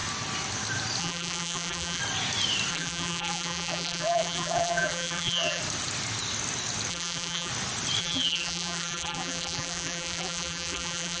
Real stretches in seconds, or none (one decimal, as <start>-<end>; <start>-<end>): 0.0-1.0; 2.0-2.7; 5.6-6.9; 7.5-8.0